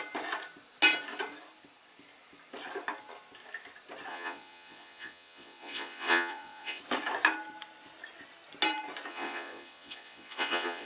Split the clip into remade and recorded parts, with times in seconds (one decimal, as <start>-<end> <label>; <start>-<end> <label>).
0.0-4.1 recorded; 4.1-6.8 remade; 6.8-9.1 recorded; 9.1-10.9 remade